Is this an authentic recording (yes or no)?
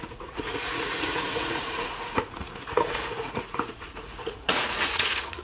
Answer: no